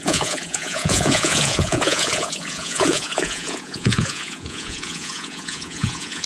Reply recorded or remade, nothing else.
remade